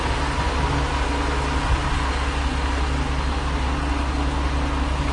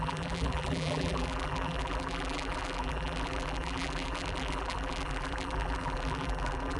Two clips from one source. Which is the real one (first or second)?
first